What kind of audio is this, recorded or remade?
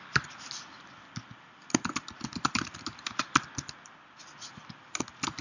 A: recorded